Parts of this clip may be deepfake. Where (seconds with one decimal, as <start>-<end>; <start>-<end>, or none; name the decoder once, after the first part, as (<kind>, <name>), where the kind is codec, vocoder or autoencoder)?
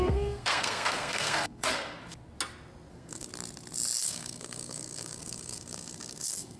0.0-2.0 (codec, SNAC); 2.9-3.3; 4.0-6.6